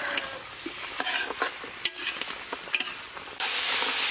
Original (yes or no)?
yes